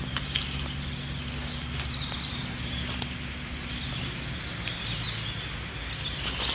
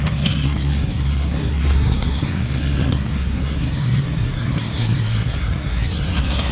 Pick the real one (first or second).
first